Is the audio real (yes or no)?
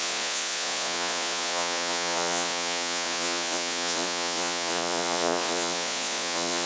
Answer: no